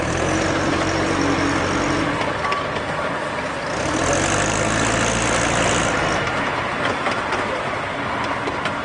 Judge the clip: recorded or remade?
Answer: recorded